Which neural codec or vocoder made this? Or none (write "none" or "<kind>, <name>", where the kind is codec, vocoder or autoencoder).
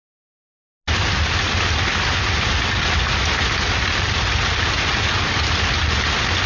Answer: none